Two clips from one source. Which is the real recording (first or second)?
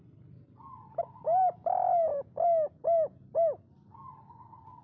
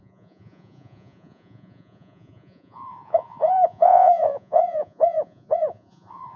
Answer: first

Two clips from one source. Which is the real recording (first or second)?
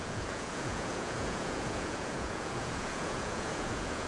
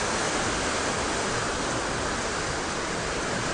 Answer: second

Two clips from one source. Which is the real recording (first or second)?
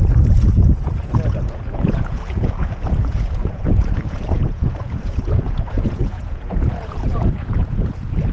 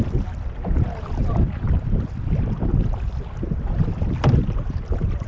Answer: second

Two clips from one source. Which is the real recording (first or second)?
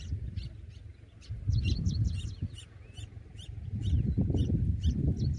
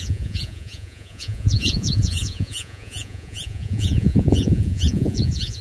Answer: first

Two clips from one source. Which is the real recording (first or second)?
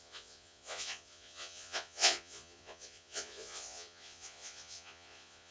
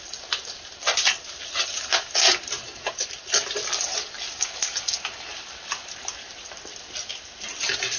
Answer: second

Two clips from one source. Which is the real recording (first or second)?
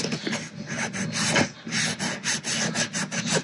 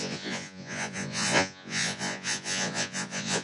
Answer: first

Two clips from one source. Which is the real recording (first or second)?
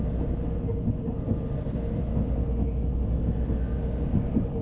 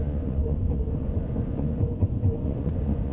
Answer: first